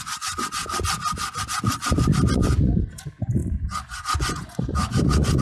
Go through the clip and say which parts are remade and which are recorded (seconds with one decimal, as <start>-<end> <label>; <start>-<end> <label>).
0.0-0.6 remade; 0.6-2.3 recorded; 2.3-5.4 remade